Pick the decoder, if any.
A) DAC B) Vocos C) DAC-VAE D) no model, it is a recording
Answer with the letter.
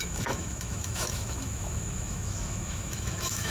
C